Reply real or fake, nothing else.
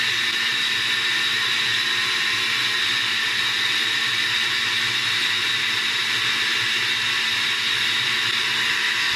real